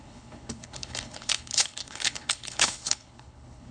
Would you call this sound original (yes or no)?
no